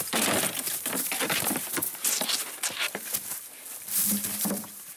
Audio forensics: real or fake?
real